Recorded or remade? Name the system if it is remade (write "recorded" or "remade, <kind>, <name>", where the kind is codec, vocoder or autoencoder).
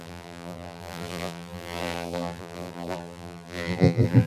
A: remade, vocoder, BigVGAN v2